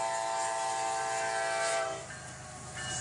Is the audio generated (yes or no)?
no